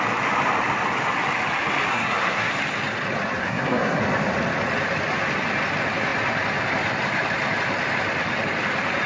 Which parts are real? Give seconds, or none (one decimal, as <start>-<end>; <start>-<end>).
0.0-1.9; 2.5-3.4; 4.0-9.1